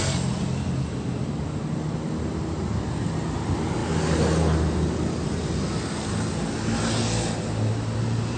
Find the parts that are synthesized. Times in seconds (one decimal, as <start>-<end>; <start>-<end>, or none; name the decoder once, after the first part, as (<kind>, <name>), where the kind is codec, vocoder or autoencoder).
none